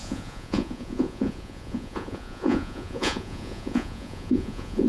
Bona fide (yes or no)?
no